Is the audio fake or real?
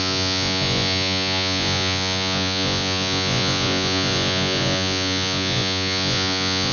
fake